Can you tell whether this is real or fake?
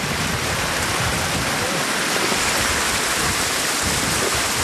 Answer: real